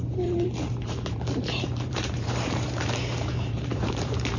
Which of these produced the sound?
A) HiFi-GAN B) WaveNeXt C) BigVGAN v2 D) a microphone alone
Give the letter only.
C